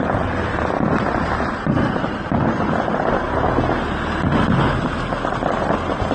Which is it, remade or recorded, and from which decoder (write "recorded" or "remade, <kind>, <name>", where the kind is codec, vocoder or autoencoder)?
recorded